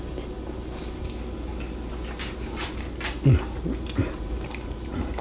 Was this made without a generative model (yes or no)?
yes